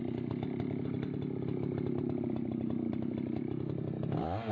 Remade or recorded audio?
recorded